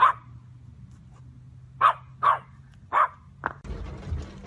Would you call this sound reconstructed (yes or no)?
no